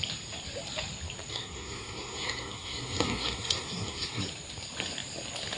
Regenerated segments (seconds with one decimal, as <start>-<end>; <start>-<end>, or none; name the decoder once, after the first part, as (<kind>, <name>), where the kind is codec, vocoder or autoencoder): 1.3-4.2 (codec, SNAC)